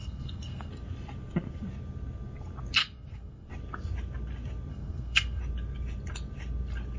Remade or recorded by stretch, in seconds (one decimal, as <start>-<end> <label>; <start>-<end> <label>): 0.0-0.7 remade; 0.7-2.8 recorded; 2.8-3.5 remade; 3.5-4.7 recorded; 4.7-5.4 remade; 5.4-7.0 recorded